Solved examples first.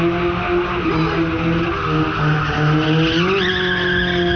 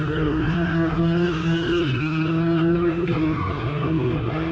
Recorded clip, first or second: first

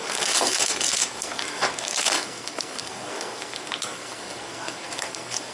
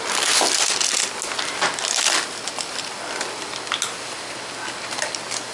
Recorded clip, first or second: second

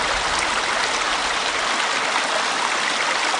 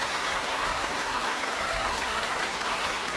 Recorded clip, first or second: first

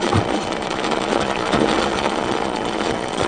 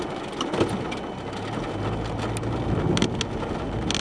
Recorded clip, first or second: second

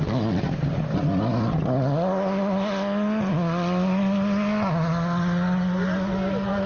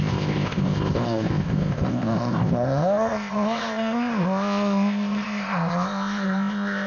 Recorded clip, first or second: first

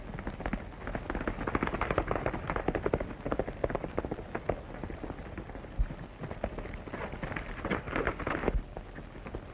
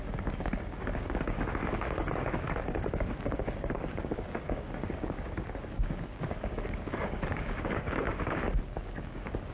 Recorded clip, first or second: first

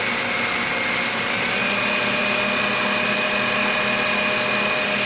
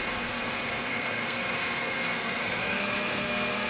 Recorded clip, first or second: first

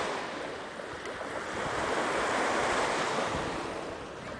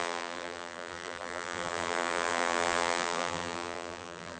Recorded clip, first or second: first